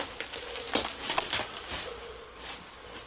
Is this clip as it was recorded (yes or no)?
yes